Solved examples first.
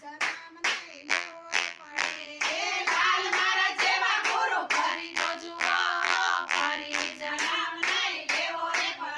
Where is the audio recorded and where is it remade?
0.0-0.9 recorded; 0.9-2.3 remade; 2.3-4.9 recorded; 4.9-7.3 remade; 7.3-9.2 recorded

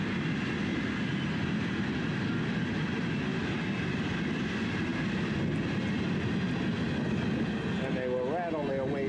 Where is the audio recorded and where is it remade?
0.0-0.7 recorded; 0.7-1.7 remade; 1.7-9.1 recorded